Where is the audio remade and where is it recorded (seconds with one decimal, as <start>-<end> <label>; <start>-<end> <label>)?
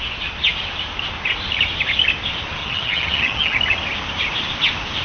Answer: 0.0-2.6 recorded; 2.6-3.6 remade; 3.6-5.0 recorded